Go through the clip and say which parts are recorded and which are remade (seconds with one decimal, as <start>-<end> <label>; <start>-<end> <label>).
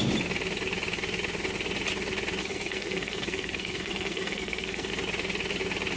0.0-2.4 recorded; 2.4-4.9 remade; 4.9-6.0 recorded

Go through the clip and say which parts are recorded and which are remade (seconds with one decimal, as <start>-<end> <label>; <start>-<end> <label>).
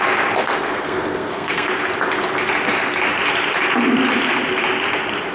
0.0-0.4 recorded; 0.4-1.7 remade; 1.7-5.3 recorded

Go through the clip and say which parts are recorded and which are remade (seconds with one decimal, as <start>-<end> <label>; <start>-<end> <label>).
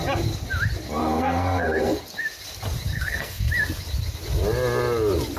0.0-1.0 recorded; 1.0-2.0 remade; 2.0-2.9 recorded; 2.9-3.5 remade; 3.5-5.4 recorded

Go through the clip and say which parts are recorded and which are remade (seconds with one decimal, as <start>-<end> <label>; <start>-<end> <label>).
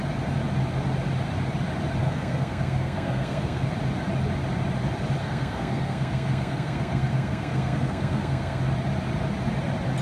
0.0-2.0 recorded; 2.0-3.7 remade; 3.7-5.2 recorded; 5.2-8.6 remade; 8.6-10.0 recorded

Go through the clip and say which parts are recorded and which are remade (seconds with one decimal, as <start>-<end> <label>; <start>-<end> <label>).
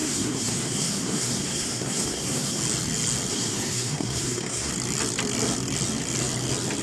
0.0-2.6 remade; 2.6-3.3 recorded; 3.3-4.7 remade; 4.7-6.8 recorded